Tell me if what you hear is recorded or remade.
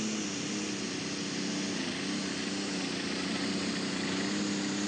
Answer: recorded